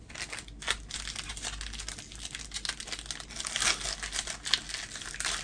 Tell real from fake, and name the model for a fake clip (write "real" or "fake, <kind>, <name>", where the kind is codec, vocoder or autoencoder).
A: real